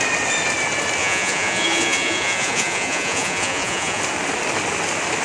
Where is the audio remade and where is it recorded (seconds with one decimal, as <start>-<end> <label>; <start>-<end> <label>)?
0.0-1.0 recorded; 1.0-4.0 remade; 4.0-5.2 recorded